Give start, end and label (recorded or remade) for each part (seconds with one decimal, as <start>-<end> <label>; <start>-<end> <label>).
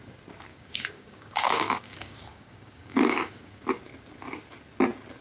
0.0-0.5 recorded; 0.5-3.6 remade; 3.6-5.2 recorded